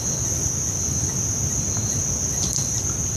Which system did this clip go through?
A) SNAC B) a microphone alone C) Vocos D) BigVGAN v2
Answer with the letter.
B